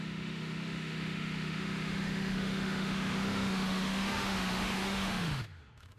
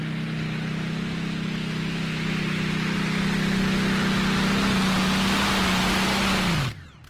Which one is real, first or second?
second